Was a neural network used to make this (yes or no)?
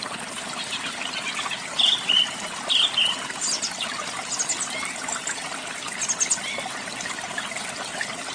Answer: no